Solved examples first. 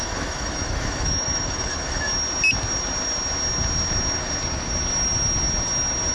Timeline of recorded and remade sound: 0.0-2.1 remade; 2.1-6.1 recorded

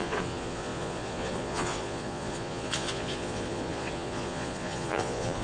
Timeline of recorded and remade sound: 0.0-5.4 remade

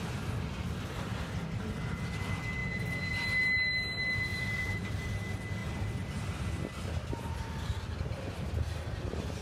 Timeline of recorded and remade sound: 0.0-4.3 recorded; 4.3-4.9 remade; 4.9-9.4 recorded

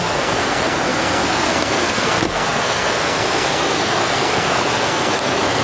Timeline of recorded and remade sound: 0.0-5.6 remade

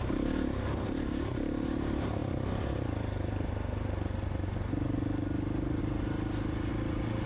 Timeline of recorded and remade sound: 0.0-7.3 recorded